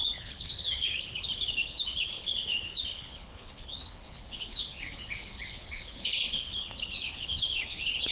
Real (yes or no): no